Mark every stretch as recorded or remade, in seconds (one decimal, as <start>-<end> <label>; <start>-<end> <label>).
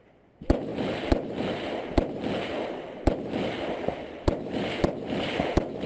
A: 0.0-5.9 recorded